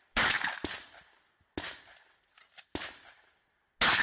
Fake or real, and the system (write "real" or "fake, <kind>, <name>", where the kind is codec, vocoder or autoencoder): real